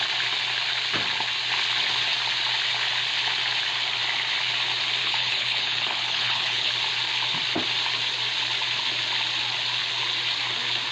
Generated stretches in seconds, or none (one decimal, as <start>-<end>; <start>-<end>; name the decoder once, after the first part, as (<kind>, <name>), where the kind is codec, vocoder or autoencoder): 5.0-6.7 (codec, HILCodec)